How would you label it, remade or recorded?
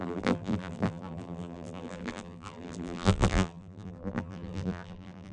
remade